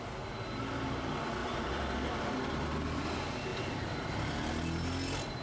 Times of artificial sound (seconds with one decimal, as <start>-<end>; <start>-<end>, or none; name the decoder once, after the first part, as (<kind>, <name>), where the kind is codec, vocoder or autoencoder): 1.4-3.0 (vocoder, BigVGAN v2); 3.5-4.5